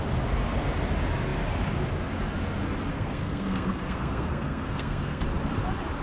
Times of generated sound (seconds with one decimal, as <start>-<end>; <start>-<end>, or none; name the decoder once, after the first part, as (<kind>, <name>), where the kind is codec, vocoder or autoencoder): 2.9-5.2 (codec, SNAC)